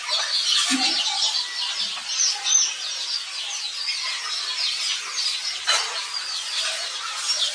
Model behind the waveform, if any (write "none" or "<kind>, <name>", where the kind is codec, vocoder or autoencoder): none